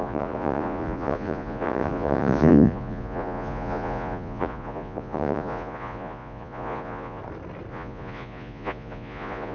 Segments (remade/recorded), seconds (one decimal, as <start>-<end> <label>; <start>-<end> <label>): 0.0-7.2 remade; 7.2-7.7 recorded; 7.7-9.5 remade

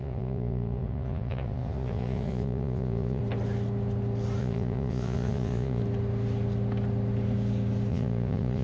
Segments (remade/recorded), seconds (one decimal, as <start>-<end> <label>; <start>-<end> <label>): 0.0-3.2 remade; 3.2-4.4 recorded; 4.4-5.8 remade; 5.8-7.9 recorded; 7.9-8.6 remade

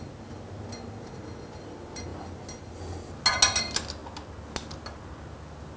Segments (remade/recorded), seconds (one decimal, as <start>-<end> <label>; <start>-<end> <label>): 0.0-5.8 recorded